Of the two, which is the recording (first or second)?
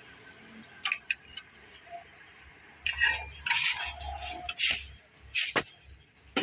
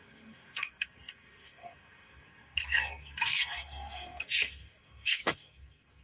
first